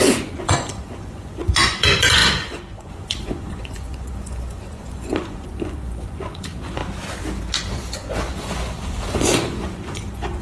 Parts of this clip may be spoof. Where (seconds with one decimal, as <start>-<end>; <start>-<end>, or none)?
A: 0.0-6.8; 7.6-10.4